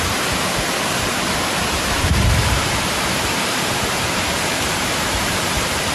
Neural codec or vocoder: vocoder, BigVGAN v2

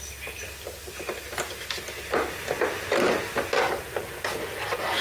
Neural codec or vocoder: none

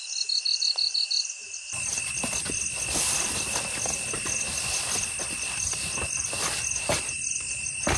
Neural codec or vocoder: none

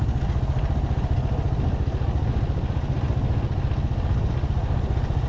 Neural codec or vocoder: none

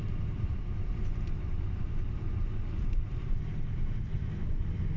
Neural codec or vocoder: vocoder, BigVGAN v2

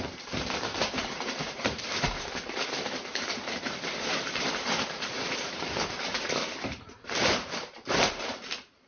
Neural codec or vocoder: vocoder, BigVGAN v2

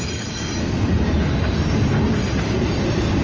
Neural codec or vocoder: none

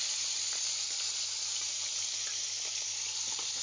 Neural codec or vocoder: none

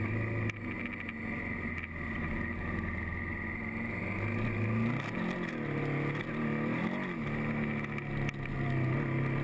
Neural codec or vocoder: none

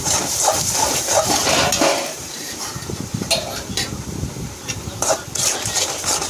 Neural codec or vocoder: vocoder, BigVGAN v2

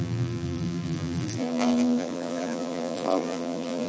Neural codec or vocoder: vocoder, BigVGAN v2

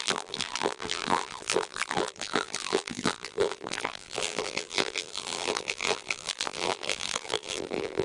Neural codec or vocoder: vocoder, BigVGAN v2